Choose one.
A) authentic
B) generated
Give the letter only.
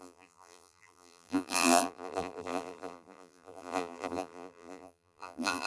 B